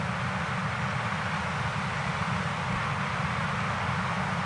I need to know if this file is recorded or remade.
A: recorded